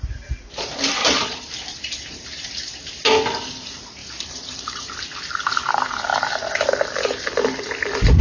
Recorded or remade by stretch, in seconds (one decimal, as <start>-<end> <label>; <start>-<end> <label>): 0.0-1.0 recorded; 1.0-2.5 remade; 2.5-4.0 recorded; 4.0-5.0 remade; 5.0-8.2 recorded